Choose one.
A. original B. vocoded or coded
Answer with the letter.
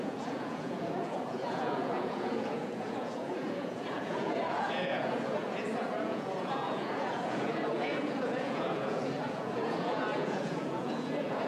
B